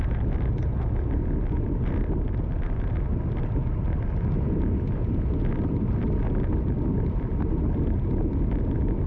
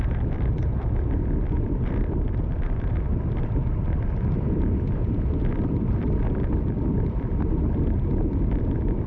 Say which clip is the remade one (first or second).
second